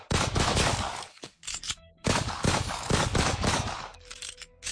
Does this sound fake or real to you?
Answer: fake